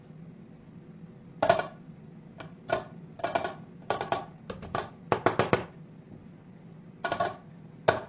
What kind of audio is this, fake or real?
real